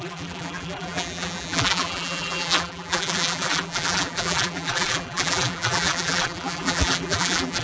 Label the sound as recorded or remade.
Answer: remade